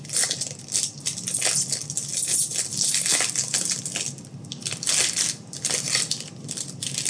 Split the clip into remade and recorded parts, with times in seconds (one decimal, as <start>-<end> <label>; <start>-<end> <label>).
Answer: 0.0-7.1 recorded